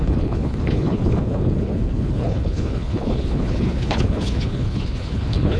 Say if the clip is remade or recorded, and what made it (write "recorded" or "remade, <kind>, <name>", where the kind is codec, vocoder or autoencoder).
remade, codec, HILCodec